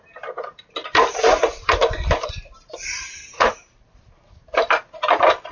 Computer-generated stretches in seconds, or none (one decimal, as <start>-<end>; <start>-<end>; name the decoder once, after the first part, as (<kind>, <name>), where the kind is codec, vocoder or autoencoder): 0.8-4.1 (vocoder, BigVGAN v2)

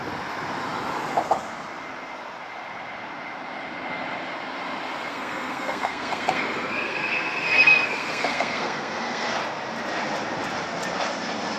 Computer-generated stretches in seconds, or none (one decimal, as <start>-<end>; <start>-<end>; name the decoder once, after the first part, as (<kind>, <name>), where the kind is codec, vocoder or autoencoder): 5.1-9.3 (codec, SNAC)

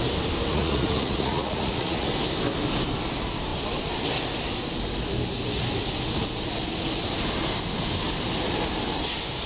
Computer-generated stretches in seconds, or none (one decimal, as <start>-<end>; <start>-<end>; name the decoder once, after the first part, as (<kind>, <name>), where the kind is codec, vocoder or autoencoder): 0.5-2.1 (vocoder, Vocos)

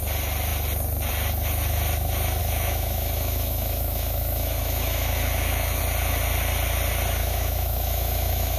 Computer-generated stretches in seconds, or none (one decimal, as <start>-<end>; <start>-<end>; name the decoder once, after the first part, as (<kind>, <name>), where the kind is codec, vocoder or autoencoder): 2.4-5.8 (autoencoder, DAC-VAE); 7.2-8.6

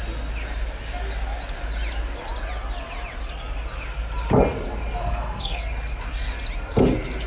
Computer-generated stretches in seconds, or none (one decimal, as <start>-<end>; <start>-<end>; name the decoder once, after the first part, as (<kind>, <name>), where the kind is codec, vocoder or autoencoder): 5.0-5.6 (codec, SNAC)

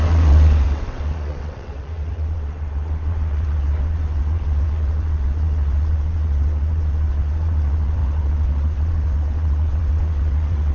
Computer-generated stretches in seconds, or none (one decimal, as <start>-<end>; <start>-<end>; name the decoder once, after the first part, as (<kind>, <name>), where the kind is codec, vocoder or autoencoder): 0.0-10.7 (vocoder, WaveNeXt)

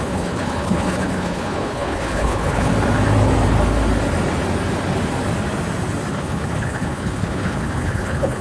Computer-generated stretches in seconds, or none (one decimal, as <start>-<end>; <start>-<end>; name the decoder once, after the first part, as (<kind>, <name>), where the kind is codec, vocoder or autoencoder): 0.0-2.7 (codec, HILCodec); 6.1-8.4